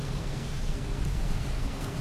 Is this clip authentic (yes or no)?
no